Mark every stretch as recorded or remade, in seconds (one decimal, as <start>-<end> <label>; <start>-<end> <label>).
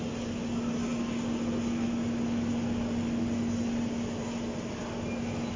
0.0-5.6 recorded